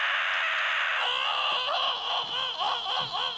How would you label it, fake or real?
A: real